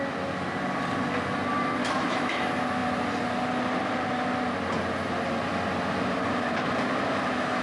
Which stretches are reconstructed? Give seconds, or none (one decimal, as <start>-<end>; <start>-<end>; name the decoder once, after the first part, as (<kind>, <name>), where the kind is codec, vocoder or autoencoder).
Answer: 1.8-2.4 (autoencoder, DAC-VAE)